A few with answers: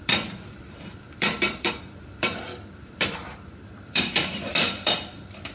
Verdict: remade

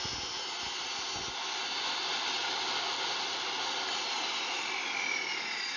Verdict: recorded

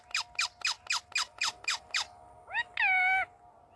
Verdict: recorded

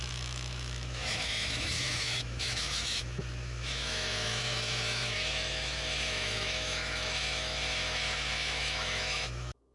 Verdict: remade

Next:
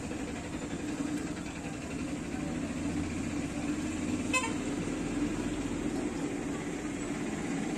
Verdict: recorded